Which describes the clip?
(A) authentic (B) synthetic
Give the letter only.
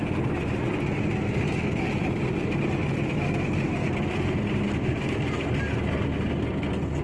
A